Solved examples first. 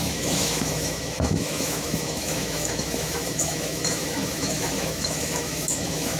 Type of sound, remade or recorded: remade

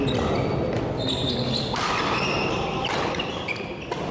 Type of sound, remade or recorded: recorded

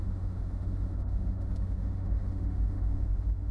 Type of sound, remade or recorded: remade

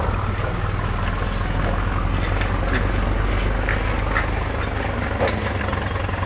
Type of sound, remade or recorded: recorded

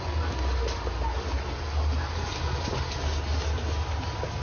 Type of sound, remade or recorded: recorded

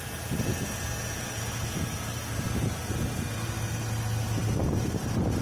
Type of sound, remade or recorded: recorded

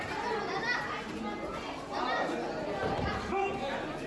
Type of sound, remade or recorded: recorded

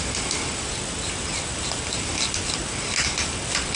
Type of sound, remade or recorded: recorded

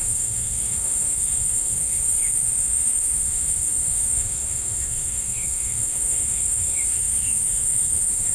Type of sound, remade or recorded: remade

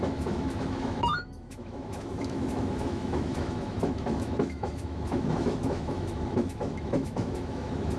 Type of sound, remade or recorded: remade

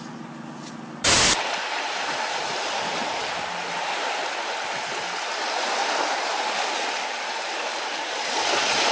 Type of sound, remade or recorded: recorded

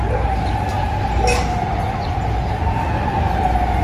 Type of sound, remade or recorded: recorded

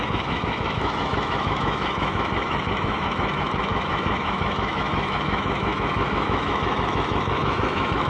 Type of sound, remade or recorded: remade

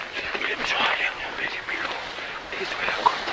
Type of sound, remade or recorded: recorded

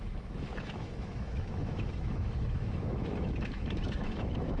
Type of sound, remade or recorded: remade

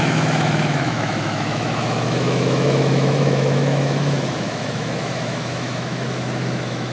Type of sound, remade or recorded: remade